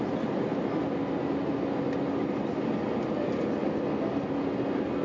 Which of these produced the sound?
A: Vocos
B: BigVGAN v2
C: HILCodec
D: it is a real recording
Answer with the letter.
D